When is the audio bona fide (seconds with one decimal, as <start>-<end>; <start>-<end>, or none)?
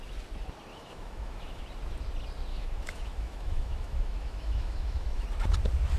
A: 0.0-0.7; 1.6-2.5; 5.2-6.0